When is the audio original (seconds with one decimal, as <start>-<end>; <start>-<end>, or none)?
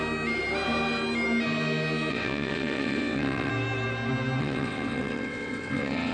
0.0-2.1; 3.5-4.4